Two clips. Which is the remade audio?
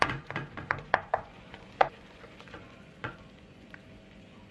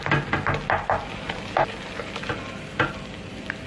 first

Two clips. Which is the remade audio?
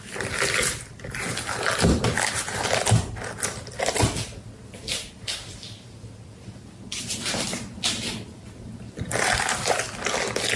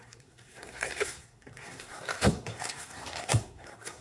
second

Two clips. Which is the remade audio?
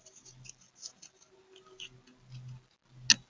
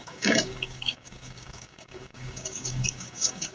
second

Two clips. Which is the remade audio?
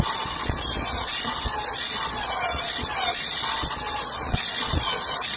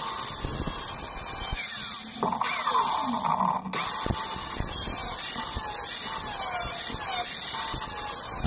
first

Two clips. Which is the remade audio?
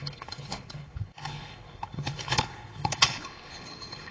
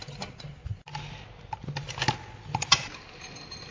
first